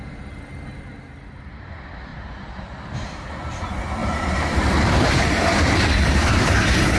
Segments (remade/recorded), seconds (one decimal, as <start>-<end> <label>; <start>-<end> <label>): 0.0-2.1 recorded; 2.1-2.8 remade; 2.8-4.0 recorded; 4.0-6.3 remade; 6.3-7.0 recorded